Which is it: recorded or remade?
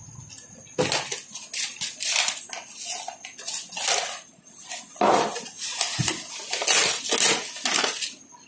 recorded